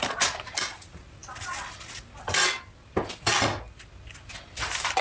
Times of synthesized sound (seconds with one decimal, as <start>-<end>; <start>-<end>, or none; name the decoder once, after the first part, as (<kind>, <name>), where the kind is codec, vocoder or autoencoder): none